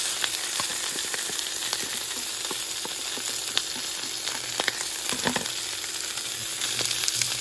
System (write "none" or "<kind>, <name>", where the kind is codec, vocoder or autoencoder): none